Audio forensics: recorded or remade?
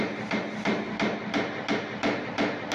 recorded